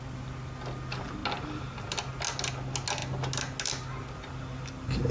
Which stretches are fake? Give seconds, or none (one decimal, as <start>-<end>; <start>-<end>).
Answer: none